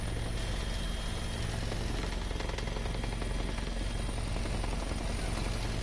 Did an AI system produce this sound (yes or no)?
no